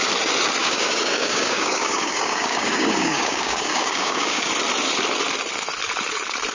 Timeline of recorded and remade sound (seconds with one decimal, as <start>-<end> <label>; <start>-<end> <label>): 0.0-0.6 recorded; 0.6-4.5 remade; 4.5-6.5 recorded

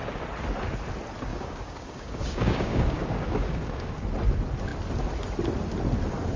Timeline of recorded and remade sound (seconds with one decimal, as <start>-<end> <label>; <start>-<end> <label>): 0.0-1.3 recorded; 1.3-3.9 remade; 3.9-6.4 recorded